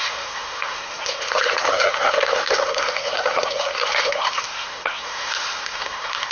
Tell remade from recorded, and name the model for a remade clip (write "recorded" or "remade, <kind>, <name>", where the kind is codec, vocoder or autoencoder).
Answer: remade, codec, SNAC